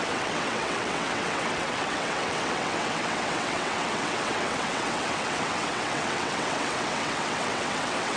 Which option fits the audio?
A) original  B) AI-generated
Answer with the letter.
B